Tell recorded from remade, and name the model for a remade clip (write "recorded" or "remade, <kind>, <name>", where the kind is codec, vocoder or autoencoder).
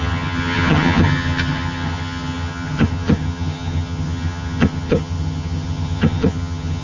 remade, vocoder, HiFi-GAN